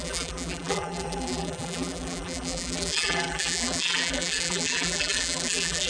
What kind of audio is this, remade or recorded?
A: remade